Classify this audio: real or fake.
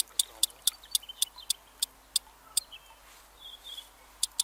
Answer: real